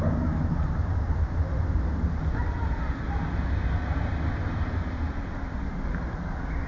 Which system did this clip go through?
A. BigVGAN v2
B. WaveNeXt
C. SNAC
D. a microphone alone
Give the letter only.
D